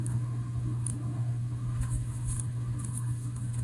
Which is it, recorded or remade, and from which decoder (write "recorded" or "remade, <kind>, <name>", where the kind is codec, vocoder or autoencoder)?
remade, autoencoder, DAC-VAE